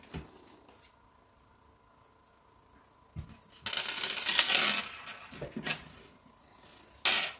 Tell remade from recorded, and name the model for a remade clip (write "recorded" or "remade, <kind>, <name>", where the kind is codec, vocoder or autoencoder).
recorded